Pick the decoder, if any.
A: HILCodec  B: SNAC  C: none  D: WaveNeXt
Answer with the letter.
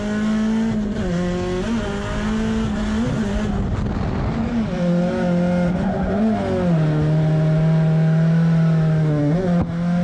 C